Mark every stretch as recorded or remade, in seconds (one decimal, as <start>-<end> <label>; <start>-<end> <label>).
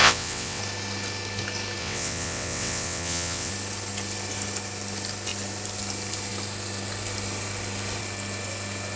0.0-0.6 remade; 0.6-1.8 recorded; 1.8-3.5 remade; 3.5-9.0 recorded